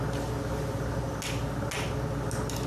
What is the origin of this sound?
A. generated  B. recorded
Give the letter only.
B